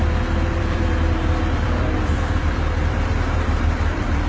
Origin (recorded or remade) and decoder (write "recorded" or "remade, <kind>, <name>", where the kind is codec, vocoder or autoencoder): remade, vocoder, BigVGAN v2